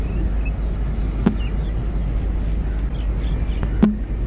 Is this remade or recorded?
recorded